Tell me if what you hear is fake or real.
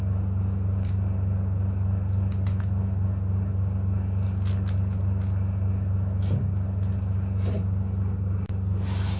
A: real